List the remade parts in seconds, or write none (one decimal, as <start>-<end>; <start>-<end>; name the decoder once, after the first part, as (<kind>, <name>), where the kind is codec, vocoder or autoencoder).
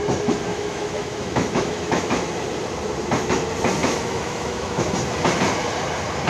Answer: 0.5-2.3 (autoencoder, DAC-VAE); 3.8-4.9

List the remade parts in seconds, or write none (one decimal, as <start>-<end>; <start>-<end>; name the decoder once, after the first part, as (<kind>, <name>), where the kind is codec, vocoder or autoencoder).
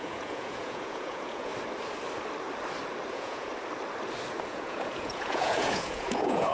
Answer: 0.0-1.5 (vocoder, Vocos); 3.1-3.5; 4.5-6.5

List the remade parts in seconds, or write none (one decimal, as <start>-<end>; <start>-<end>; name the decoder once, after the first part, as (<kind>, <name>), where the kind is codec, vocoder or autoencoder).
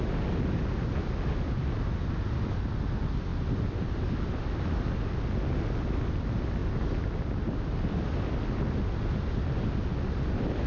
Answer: none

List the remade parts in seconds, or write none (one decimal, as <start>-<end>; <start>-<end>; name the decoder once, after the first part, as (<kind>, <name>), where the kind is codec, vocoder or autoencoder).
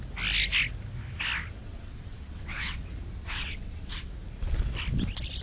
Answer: 1.6-2.8 (vocoder, WaveNeXt); 3.2-4.1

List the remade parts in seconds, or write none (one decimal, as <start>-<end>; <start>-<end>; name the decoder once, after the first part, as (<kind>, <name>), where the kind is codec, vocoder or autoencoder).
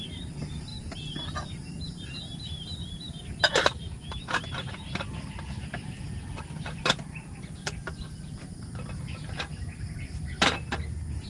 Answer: none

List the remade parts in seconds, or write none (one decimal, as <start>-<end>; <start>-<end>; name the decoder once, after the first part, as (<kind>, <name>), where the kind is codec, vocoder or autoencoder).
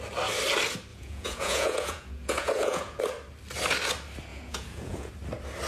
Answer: 0.9-3.0 (vocoder, Vocos); 4.3-5.1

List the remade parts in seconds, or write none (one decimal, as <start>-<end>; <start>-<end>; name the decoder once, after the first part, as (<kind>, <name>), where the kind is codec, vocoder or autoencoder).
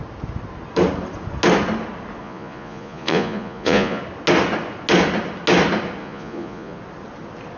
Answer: 2.2-4.0 (vocoder, Vocos); 6.0-6.8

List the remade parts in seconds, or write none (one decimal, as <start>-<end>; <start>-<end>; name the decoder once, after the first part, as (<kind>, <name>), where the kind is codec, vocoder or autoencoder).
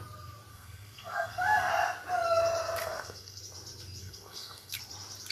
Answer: 0.5-1.7 (codec, SNAC); 2.8-3.4; 4.0-4.8